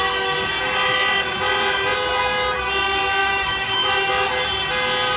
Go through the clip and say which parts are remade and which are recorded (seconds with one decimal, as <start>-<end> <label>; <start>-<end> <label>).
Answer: 0.0-3.2 recorded; 3.2-4.1 remade; 4.1-5.2 recorded